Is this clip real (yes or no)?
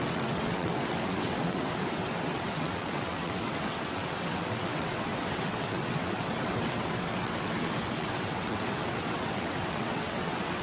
no